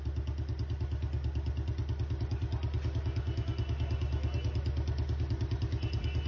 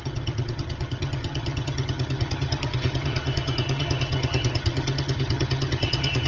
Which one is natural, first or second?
first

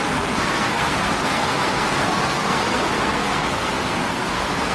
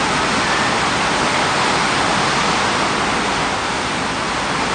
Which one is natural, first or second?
second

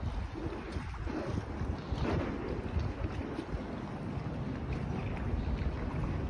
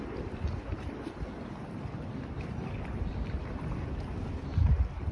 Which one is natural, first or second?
first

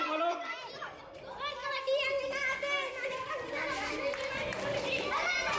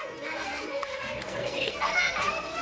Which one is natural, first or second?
first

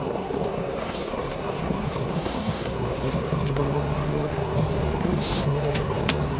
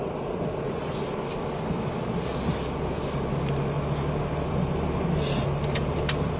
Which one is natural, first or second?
second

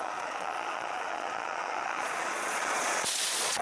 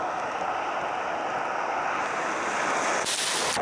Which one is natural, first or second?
second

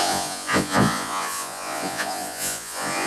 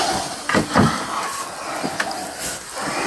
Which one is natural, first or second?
second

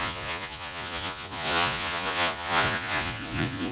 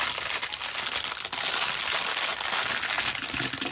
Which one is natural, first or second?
second